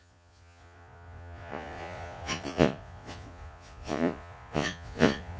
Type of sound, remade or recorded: remade